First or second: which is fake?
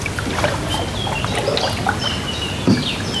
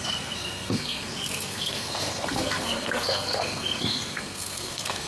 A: second